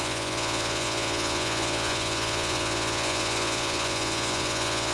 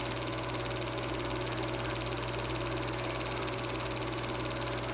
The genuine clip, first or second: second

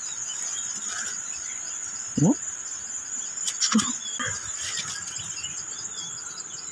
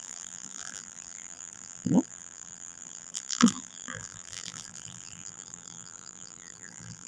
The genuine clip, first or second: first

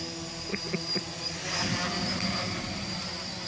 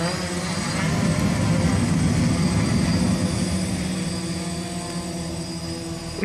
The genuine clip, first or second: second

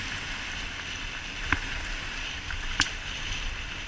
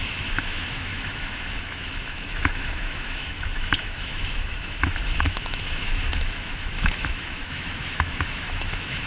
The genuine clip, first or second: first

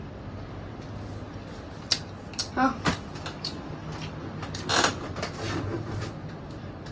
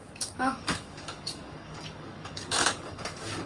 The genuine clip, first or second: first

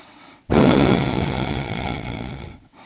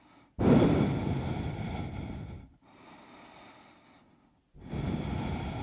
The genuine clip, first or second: second